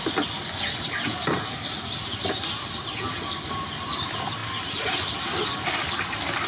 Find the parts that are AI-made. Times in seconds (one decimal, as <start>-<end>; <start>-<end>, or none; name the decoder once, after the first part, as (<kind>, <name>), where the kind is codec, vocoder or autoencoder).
3.5-4.4 (vocoder, BigVGAN v2); 5.0-6.5

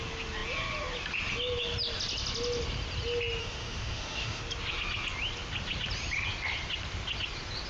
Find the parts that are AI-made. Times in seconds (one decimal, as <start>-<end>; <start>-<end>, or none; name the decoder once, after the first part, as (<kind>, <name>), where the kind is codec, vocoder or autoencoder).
3.4-4.4 (autoencoder, DAC-VAE)

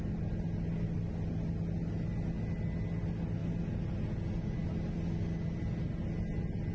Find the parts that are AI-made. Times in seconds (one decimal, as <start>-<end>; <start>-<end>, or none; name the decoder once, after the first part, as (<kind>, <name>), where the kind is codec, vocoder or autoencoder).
none

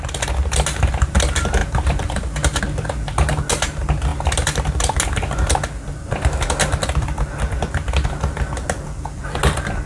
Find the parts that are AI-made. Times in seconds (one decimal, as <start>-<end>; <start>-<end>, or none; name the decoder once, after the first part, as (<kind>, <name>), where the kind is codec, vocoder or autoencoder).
1.6-2.6 (vocoder, BigVGAN v2)

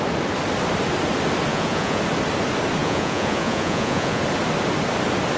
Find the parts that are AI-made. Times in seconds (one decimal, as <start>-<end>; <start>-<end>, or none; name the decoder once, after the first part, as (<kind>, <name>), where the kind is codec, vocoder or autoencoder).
1.5-2.0 (vocoder, Vocos); 2.8-4.2

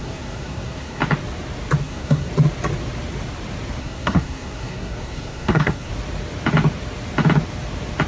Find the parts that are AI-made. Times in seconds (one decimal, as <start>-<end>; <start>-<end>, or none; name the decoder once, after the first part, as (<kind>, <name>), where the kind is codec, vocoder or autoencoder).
0.0-1.0 (codec, SNAC); 1.8-2.3; 3.8-5.9

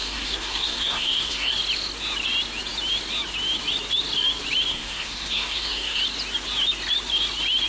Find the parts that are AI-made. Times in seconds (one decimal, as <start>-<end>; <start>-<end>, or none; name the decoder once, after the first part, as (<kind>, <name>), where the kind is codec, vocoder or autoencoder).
0.0-1.5 (codec, SNAC); 4.7-6.0